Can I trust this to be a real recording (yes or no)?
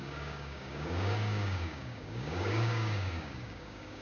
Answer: no